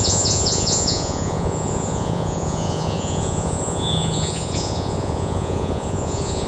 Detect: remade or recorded remade